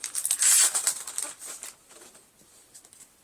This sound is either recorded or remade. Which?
recorded